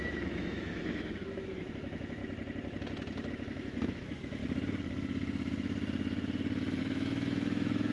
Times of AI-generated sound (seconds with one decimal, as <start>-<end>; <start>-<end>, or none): 0.0-2.2; 3.3-4.4; 6.8-7.9